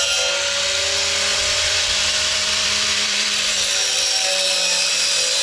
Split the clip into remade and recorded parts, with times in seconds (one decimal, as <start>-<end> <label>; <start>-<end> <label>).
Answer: 0.0-1.3 recorded; 1.3-3.5 remade; 3.5-5.4 recorded